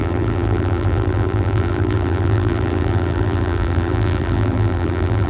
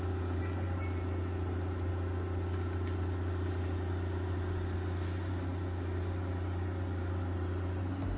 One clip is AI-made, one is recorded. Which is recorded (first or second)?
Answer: second